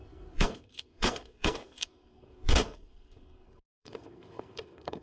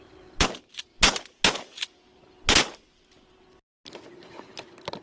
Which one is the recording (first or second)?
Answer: second